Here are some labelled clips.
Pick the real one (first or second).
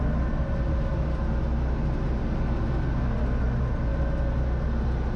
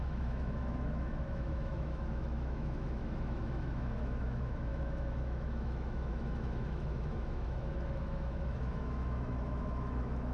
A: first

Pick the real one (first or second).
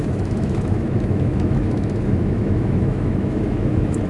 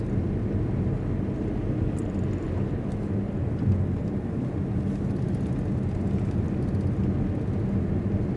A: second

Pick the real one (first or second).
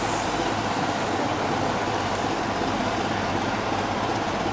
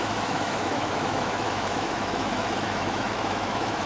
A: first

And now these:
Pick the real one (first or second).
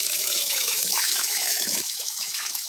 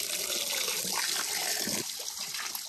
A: second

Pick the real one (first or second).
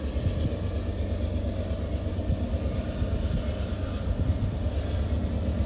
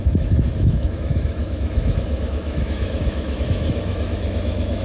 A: first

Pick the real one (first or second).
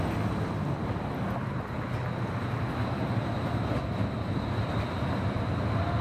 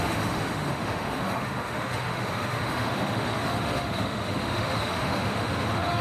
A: first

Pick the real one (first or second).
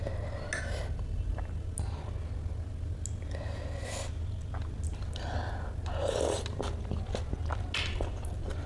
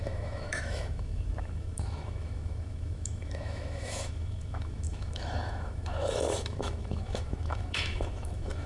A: first